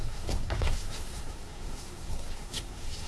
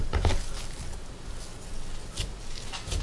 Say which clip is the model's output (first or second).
first